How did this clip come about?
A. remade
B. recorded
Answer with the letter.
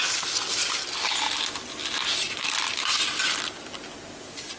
B